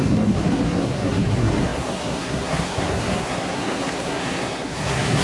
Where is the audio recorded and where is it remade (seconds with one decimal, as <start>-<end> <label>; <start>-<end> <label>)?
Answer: 0.0-5.2 remade